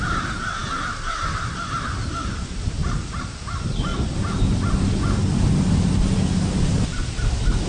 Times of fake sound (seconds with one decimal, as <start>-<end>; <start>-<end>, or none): 0.0-2.8; 3.3-3.9